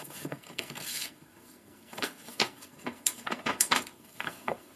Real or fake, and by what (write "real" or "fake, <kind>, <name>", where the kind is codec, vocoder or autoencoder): fake, codec, SNAC